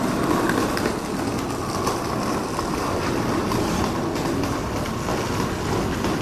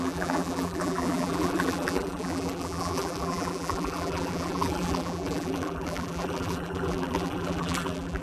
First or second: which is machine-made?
second